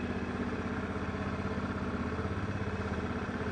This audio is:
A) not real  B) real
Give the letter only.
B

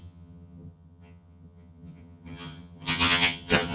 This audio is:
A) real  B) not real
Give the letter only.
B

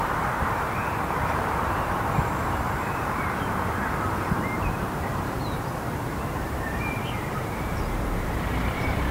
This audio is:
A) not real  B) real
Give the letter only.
A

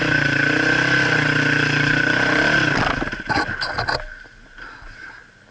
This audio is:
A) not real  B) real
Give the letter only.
B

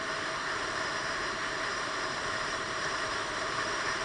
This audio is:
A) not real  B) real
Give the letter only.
A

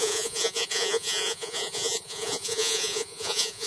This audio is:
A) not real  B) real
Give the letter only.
A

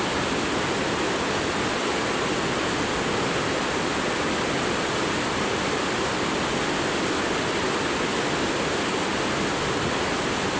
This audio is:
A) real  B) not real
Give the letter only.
A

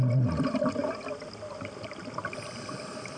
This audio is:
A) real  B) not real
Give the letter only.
A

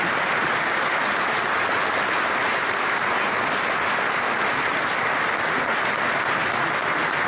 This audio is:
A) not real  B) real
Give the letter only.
B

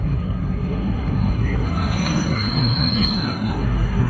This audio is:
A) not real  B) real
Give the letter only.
A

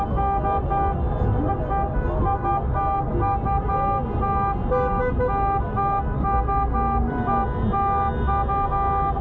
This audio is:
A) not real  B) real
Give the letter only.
B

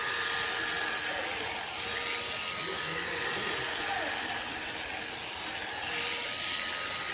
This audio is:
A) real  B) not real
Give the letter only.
A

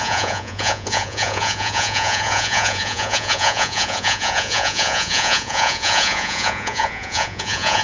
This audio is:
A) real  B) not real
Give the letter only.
B